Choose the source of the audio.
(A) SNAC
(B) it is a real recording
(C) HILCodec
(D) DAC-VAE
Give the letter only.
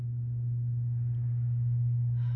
B